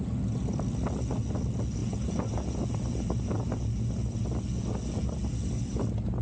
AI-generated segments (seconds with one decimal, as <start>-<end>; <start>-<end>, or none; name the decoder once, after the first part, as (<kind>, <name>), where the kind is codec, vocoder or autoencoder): none